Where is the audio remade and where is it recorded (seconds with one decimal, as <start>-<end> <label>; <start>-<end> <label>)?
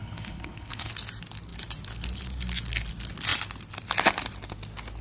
0.0-0.9 remade; 0.9-5.0 recorded